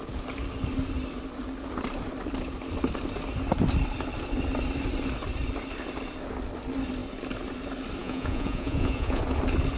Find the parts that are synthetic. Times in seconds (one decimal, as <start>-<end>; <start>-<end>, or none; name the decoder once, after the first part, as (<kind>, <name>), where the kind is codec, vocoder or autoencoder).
8.0-9.2 (vocoder, Vocos)